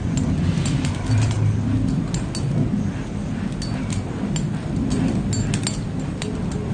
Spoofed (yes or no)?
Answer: no